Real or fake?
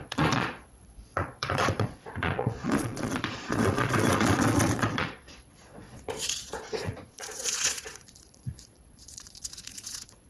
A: fake